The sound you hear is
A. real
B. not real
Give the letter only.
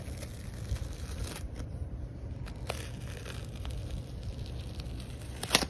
B